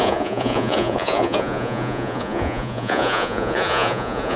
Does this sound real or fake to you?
fake